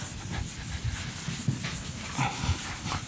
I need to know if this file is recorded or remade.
recorded